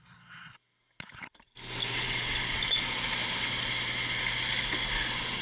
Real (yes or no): yes